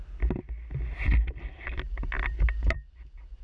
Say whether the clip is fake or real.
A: real